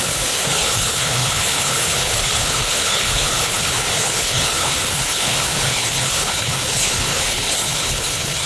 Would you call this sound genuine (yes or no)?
no